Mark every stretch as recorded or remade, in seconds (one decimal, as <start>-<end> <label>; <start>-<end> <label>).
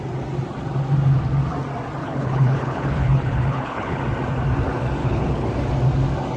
0.0-2.0 recorded; 2.0-4.0 remade; 4.0-5.0 recorded; 5.0-5.5 remade; 5.5-6.4 recorded